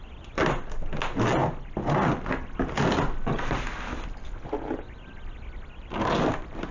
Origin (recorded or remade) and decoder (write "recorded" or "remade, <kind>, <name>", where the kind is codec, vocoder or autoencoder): recorded